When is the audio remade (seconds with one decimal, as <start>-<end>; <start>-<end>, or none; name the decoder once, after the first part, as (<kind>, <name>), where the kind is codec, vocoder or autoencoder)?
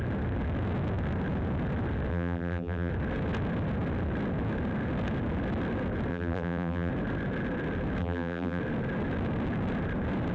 2.1-2.9 (vocoder, BigVGAN v2); 6.1-6.9; 8.0-8.6